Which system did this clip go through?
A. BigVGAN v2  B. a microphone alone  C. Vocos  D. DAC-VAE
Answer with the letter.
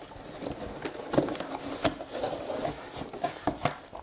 B